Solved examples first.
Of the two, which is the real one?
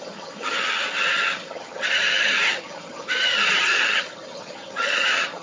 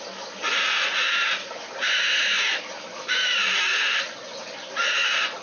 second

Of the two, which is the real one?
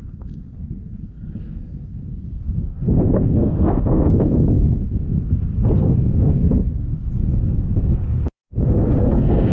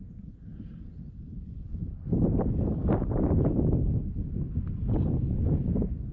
second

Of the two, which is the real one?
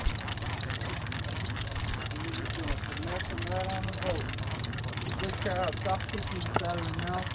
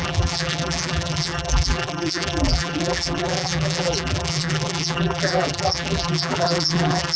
first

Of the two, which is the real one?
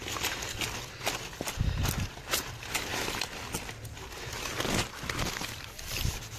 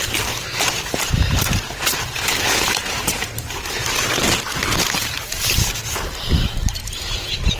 first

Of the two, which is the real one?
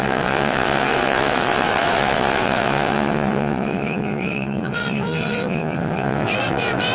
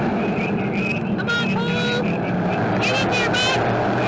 second